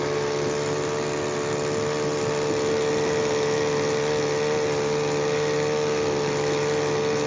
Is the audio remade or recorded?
recorded